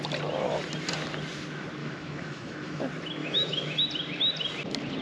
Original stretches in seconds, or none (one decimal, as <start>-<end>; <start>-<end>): 0.0-1.8; 2.8-3.2; 3.8-5.0